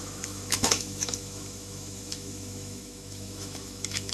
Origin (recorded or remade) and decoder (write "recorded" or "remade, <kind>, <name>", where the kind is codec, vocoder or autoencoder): remade, autoencoder, DAC-VAE